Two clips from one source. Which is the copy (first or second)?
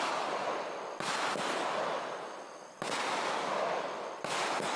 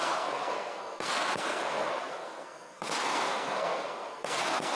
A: second